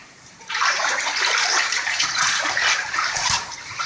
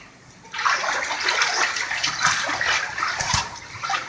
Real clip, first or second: second